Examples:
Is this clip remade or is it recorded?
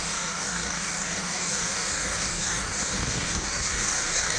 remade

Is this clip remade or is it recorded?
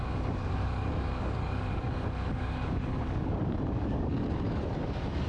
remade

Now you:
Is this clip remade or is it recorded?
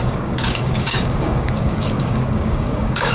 remade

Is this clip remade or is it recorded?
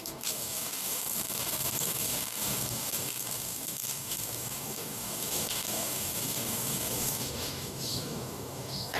remade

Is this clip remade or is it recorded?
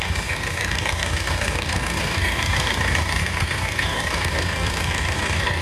remade